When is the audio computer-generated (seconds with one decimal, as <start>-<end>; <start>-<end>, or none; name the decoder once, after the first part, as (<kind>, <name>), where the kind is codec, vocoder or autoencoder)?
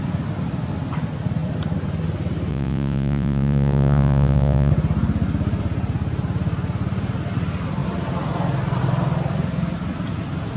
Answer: 2.5-4.7 (vocoder, Vocos)